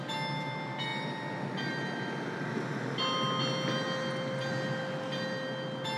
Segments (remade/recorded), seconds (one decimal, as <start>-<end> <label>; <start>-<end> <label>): 0.0-6.0 recorded